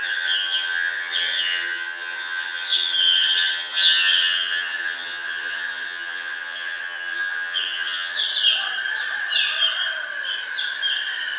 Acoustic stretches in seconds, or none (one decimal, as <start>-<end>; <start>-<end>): 8.2-11.4